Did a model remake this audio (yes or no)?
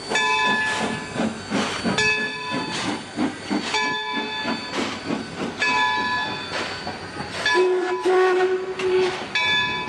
no